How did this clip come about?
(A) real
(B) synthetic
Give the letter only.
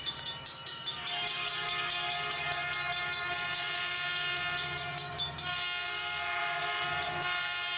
B